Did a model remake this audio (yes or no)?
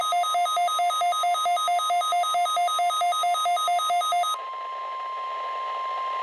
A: no